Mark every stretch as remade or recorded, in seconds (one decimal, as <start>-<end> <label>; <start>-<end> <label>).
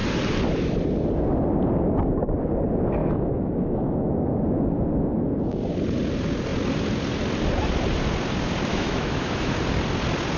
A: 0.0-3.0 recorded; 3.0-4.1 remade; 4.1-8.7 recorded; 8.7-9.6 remade; 9.6-10.4 recorded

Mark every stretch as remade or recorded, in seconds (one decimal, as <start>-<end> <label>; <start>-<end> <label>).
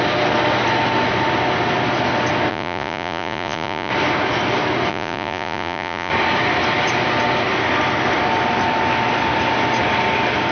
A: 0.0-2.5 recorded; 2.5-3.9 remade; 3.9-4.9 recorded; 4.9-6.1 remade; 6.1-10.5 recorded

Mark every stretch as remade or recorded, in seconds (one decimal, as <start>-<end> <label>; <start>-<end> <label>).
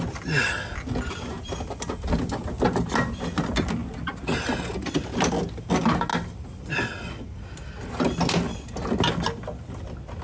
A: 0.0-10.2 recorded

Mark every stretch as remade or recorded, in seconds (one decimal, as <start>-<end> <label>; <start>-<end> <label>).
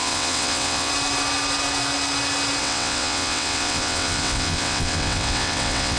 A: 0.0-0.9 remade; 0.9-2.6 recorded; 2.6-6.0 remade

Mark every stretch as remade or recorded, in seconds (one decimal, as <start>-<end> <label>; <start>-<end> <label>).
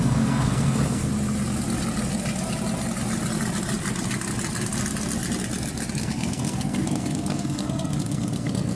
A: 0.0-1.1 remade; 1.1-6.0 recorded; 6.0-8.8 remade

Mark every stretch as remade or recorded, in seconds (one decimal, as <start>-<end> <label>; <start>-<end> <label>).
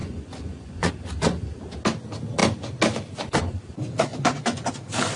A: 0.0-0.9 remade; 0.9-4.1 recorded; 4.1-4.7 remade; 4.7-5.2 recorded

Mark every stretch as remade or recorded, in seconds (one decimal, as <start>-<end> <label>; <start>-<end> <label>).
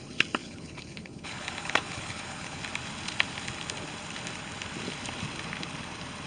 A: 0.0-0.4 recorded; 0.4-2.6 remade; 2.6-6.3 recorded